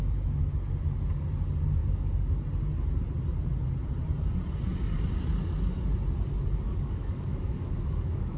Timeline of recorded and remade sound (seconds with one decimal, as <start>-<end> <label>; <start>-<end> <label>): 0.0-1.8 recorded; 1.8-2.4 remade; 2.4-6.7 recorded; 6.7-8.4 remade